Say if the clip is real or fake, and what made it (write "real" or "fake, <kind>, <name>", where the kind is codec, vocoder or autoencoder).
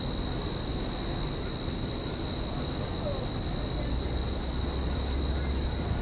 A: real